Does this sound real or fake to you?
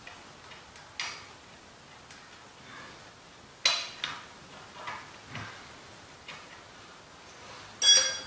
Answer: real